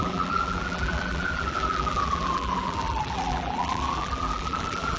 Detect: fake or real fake